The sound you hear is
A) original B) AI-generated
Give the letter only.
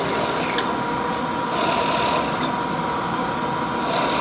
A